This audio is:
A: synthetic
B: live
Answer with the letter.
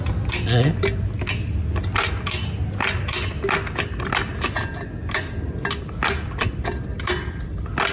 B